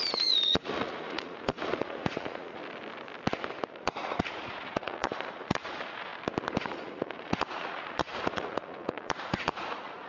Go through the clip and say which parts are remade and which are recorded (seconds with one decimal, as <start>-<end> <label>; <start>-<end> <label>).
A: 0.0-2.6 remade; 2.6-3.7 recorded; 3.7-6.1 remade; 6.1-6.6 recorded; 6.6-10.1 remade